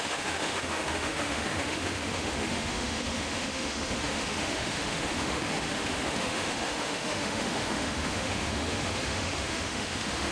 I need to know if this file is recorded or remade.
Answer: remade